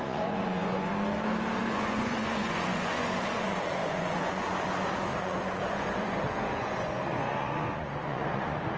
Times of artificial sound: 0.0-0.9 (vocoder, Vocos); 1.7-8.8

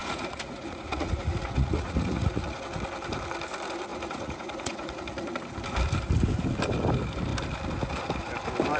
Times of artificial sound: 0.0-2.6 (vocoder, Vocos); 3.9-5.3

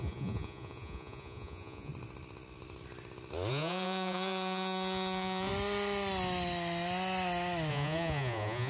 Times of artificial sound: 0.0-1.9 (vocoder, Vocos); 3.5-5.5; 7.7-8.7

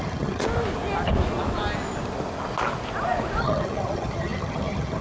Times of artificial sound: 0.0-0.4 (vocoder, HiFi-GAN); 3.4-5.0

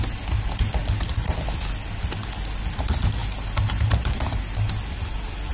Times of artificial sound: 3.2-4.4 (vocoder, BigVGAN v2)

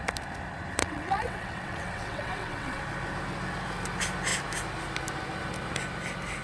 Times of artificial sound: 0.8-2.8 (vocoder, WaveNeXt)